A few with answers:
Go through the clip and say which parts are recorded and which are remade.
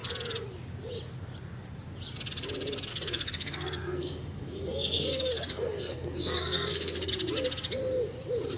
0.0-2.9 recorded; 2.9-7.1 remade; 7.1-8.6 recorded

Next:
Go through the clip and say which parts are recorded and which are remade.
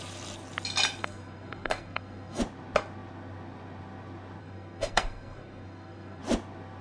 0.0-1.0 recorded; 1.0-2.4 remade; 2.4-4.4 recorded; 4.4-6.2 remade; 6.2-6.8 recorded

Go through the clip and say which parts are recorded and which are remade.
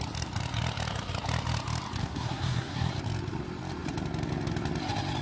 0.0-2.0 recorded; 2.0-2.9 remade; 2.9-5.2 recorded